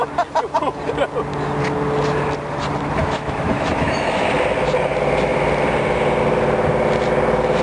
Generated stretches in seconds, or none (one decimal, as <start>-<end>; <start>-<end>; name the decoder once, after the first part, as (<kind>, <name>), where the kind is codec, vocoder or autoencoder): 3.0-4.3 (autoencoder, DAC-VAE)